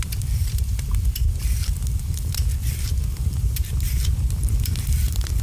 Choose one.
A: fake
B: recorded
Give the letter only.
A